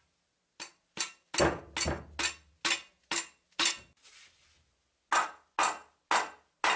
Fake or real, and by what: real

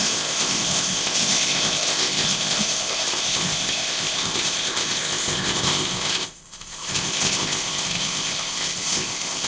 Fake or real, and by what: fake, codec, ZipCodec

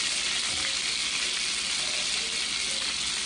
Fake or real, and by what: real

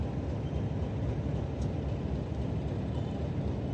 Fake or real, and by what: real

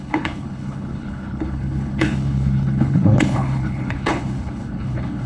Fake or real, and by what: fake, codec, HILCodec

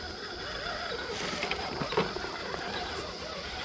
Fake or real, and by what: fake, vocoder, BigVGAN v2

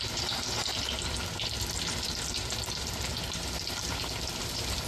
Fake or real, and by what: fake, vocoder, BigVGAN v2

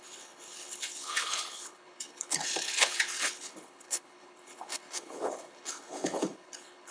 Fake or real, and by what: fake, codec, HILCodec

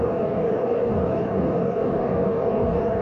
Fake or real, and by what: fake, codec, DAC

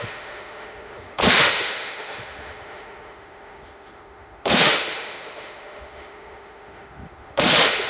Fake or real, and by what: fake, autoencoder, DAC-VAE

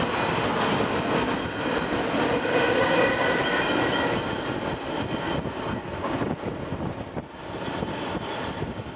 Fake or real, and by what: real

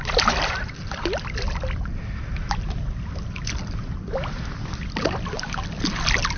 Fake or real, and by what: real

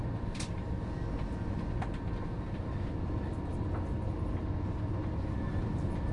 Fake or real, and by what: real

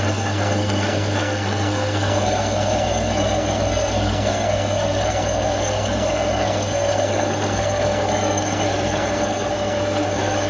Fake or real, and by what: fake, codec, SNAC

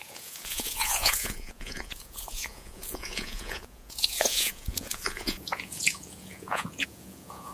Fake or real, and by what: fake, vocoder, Vocos